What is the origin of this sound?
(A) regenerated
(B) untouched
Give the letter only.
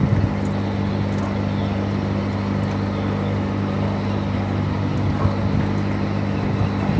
B